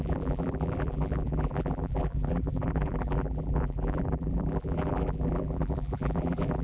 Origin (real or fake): fake